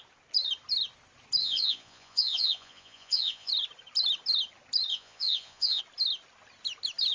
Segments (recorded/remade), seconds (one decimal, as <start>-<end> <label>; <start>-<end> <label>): 0.0-1.4 recorded; 1.4-3.5 remade; 3.5-4.9 recorded; 4.9-5.8 remade; 5.8-7.1 recorded

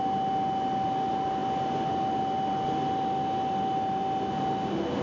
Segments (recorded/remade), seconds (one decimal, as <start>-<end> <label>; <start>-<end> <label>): 0.0-5.0 recorded

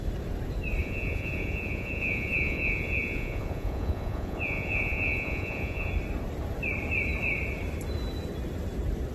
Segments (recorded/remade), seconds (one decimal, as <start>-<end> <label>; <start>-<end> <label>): 0.0-0.8 recorded; 0.8-5.9 remade; 5.9-9.1 recorded